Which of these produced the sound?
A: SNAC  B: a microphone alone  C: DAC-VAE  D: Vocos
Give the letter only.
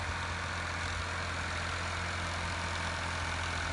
B